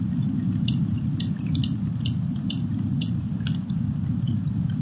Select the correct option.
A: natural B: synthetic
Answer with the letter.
A